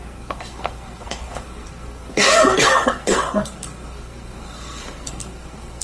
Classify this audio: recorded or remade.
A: remade